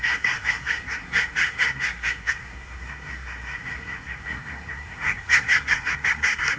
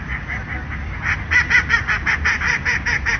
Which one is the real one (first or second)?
second